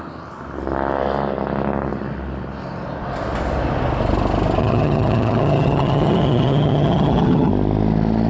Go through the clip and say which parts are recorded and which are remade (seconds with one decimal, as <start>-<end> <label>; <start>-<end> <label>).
0.0-4.6 recorded; 4.6-7.5 remade; 7.5-8.3 recorded